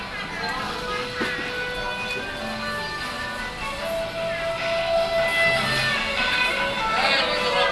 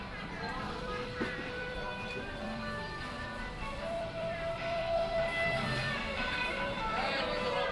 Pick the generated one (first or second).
second